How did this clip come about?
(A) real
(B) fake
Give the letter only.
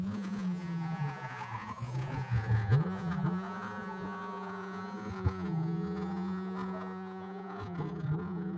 B